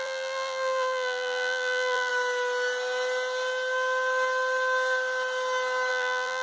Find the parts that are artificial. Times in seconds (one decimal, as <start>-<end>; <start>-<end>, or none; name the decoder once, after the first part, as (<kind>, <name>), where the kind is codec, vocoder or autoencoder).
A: 0.0-2.1 (vocoder, BigVGAN v2); 5.9-6.4

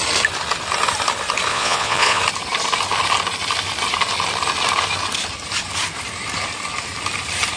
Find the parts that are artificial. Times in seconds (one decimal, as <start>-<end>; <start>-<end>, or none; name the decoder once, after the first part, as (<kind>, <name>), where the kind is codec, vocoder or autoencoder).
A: 1.5-2.2 (vocoder, Vocos)

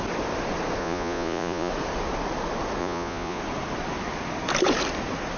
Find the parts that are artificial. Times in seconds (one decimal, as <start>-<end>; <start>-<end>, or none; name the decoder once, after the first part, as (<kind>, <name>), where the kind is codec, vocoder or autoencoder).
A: 0.8-1.7 (vocoder, Vocos); 2.8-3.4

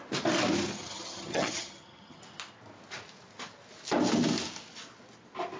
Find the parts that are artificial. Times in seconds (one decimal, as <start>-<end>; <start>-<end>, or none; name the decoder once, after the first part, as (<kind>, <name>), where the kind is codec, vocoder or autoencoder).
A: 0.7-2.2 (vocoder, HiFi-GAN)

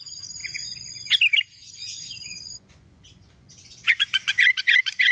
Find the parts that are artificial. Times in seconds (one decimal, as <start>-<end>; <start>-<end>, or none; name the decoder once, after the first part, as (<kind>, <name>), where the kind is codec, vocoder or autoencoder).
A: 0.4-1.1 (vocoder, Vocos); 1.6-5.1

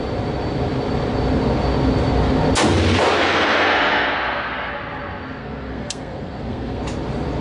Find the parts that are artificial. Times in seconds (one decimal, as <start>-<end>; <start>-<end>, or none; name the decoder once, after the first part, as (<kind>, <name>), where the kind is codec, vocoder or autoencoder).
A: 3.3-4.7 (codec, SNAC); 5.4-6.8